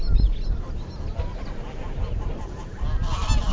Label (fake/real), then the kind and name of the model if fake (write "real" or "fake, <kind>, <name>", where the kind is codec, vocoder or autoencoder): real